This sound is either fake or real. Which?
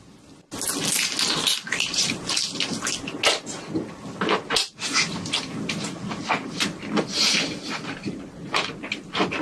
real